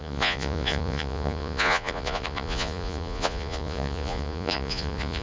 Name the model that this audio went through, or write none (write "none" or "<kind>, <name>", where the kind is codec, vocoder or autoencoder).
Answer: vocoder, Vocos